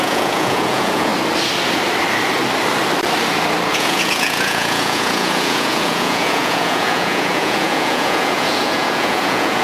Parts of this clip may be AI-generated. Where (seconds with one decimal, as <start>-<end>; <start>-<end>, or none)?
0.0-1.1; 3.7-9.6